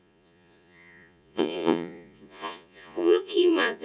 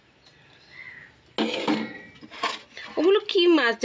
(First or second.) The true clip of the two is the second